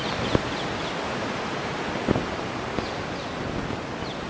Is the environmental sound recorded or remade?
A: recorded